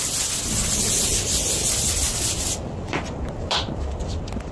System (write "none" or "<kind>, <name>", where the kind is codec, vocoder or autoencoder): none